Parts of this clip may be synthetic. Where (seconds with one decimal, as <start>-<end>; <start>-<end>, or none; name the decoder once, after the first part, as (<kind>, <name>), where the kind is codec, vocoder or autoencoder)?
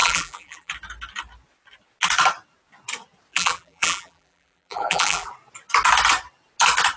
0.0-0.7 (vocoder, BigVGAN v2); 3.3-5.3